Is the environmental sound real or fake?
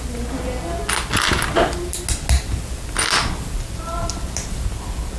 real